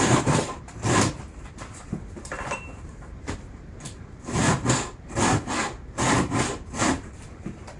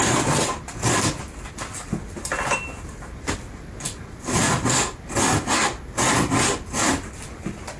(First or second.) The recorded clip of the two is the second